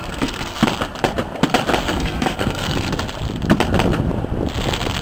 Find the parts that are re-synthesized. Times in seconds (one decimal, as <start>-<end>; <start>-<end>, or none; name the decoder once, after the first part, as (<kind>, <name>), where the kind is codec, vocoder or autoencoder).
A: 0.0-0.6 (codec, SNAC); 1.8-2.9